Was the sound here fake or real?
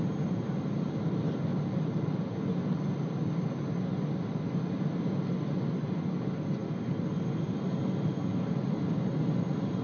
real